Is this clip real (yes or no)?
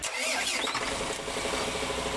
yes